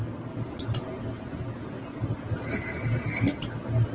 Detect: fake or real real